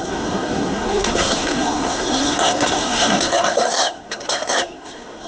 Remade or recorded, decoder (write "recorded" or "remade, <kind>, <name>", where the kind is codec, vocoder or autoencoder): remade, codec, SNAC